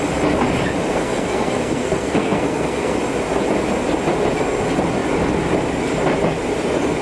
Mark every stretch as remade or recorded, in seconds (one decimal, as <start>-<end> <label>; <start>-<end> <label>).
0.0-0.9 recorded; 0.9-3.0 remade; 3.0-7.0 recorded